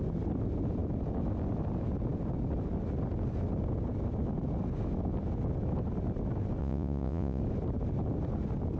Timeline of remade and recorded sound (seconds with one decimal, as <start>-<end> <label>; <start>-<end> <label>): 0.0-6.6 recorded; 6.6-7.4 remade; 7.4-8.8 recorded